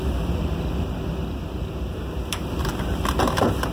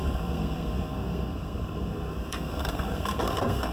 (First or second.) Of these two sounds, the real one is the first